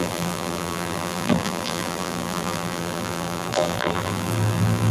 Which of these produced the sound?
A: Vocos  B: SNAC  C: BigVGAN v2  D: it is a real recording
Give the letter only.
C